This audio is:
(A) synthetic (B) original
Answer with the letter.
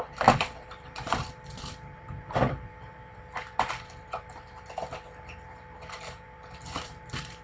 A